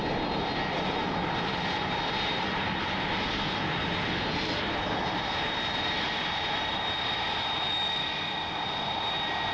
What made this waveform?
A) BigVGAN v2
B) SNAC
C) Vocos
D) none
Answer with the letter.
D